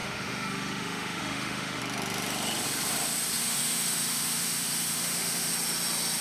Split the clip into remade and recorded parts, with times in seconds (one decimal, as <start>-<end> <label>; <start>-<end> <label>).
0.0-1.8 remade; 1.8-3.4 recorded; 3.4-5.5 remade; 5.5-6.2 recorded